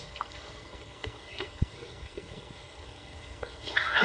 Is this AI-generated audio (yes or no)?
yes